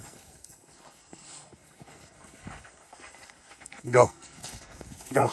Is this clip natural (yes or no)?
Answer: no